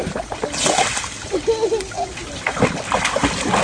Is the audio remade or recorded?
recorded